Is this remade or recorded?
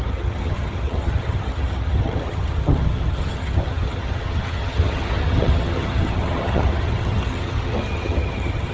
remade